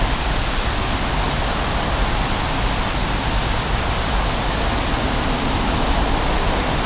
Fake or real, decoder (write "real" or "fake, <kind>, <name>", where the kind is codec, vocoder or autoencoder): real